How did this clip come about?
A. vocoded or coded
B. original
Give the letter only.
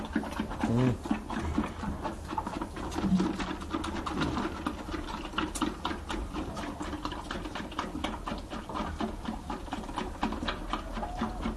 B